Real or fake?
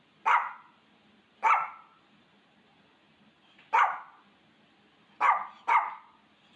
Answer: real